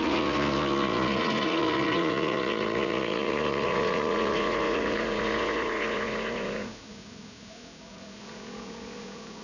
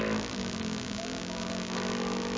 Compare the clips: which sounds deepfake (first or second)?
first